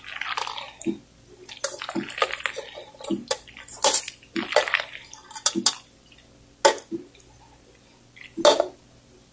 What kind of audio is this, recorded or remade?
recorded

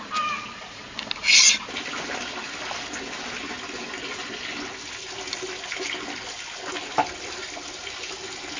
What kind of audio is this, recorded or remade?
recorded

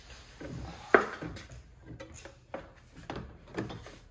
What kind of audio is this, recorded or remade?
recorded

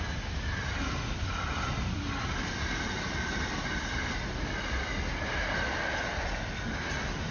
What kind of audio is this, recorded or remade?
recorded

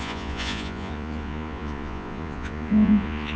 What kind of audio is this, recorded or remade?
remade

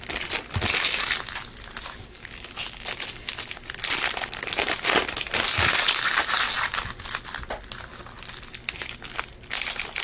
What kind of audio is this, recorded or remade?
recorded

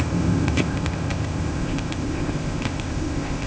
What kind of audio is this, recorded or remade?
remade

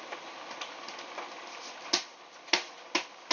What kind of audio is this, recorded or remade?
recorded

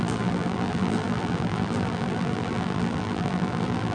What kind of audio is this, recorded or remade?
remade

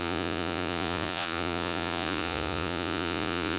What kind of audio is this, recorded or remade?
remade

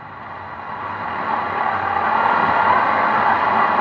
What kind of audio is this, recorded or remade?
remade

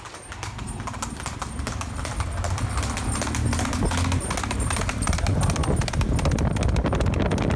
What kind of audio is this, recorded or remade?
recorded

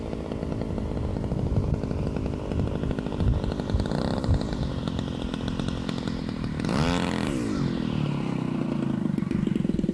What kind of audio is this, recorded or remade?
recorded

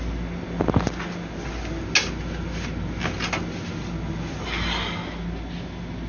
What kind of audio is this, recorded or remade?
recorded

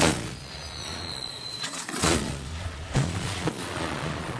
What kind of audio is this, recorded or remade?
remade